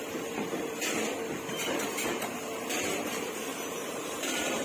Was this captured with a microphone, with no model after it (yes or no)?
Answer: no